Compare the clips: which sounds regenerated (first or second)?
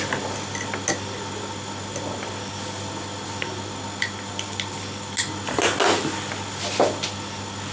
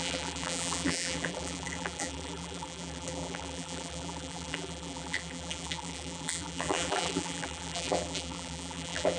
second